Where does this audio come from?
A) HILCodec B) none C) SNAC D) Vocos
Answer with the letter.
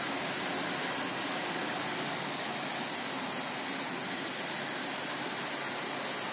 B